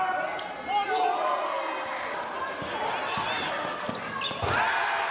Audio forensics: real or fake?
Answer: real